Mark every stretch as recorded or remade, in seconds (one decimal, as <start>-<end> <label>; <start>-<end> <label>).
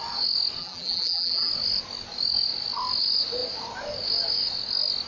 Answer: 0.0-0.6 recorded; 0.6-1.5 remade; 1.5-5.1 recorded